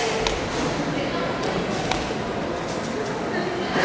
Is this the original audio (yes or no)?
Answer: yes